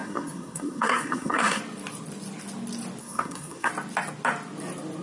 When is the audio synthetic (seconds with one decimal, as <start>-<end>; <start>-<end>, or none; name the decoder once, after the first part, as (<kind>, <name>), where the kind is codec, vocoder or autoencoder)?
0.0-1.6 (codec, SNAC); 3.0-3.7